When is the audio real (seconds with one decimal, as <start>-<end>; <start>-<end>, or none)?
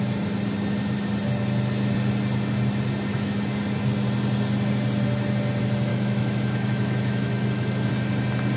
0.0-3.1; 3.6-5.9; 7.9-8.6